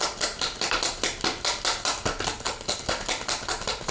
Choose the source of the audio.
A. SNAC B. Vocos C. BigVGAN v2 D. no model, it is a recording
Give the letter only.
D